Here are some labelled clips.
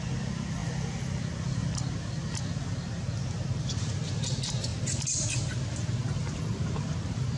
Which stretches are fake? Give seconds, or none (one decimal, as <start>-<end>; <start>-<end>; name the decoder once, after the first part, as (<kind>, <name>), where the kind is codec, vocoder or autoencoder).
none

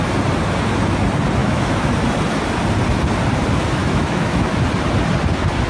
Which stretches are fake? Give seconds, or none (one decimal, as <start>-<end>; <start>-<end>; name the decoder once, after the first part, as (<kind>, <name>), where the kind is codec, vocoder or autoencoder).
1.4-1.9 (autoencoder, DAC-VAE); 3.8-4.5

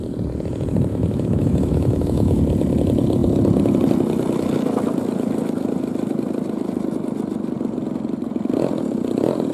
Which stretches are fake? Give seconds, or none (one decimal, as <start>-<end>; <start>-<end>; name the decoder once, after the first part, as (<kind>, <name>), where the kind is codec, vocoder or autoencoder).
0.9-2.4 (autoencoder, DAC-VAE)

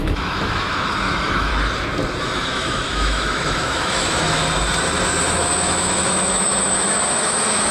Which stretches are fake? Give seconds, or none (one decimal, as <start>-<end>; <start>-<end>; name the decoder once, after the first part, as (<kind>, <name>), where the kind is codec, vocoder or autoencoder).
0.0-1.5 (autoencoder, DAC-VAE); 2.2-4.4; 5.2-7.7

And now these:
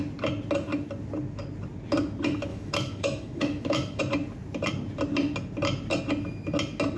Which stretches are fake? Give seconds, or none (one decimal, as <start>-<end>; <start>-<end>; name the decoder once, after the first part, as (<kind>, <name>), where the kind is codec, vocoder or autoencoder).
2.5-4.0 (autoencoder, DAC-VAE)

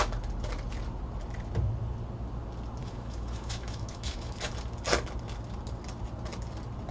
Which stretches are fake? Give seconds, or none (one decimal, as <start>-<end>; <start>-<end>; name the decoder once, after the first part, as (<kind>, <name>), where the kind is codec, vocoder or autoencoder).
2.8-4.4 (autoencoder, DAC-VAE)

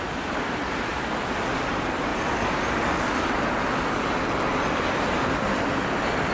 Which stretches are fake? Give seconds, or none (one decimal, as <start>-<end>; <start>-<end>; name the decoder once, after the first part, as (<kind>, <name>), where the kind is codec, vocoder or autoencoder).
none